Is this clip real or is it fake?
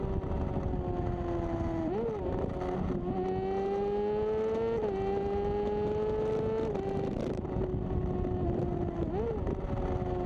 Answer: real